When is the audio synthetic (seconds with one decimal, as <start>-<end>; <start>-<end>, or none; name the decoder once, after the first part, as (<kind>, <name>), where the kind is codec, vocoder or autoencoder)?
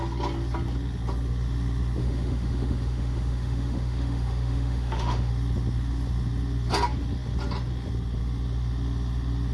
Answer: 2.0-5.3 (autoencoder, DAC-VAE)